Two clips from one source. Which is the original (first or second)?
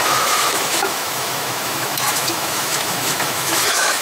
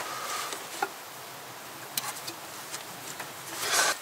second